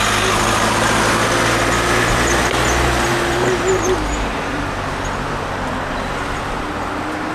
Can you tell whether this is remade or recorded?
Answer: recorded